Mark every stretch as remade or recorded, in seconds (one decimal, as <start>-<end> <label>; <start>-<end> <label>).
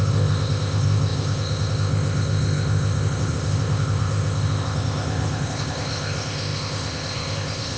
0.0-7.8 remade